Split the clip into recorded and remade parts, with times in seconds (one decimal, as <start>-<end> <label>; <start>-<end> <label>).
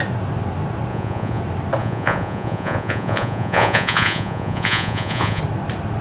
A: 0.0-0.9 recorded; 0.9-1.4 remade; 1.4-1.8 recorded; 1.8-5.4 remade; 5.4-6.0 recorded